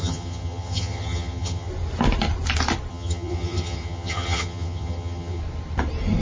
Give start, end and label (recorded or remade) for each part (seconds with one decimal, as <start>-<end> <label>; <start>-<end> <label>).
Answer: 0.0-1.7 remade; 1.7-2.9 recorded; 2.9-5.4 remade; 5.4-6.2 recorded